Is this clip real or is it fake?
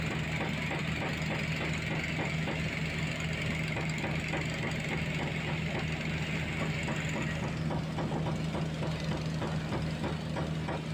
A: real